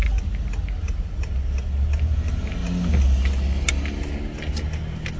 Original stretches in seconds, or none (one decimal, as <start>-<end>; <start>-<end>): 0.0-5.2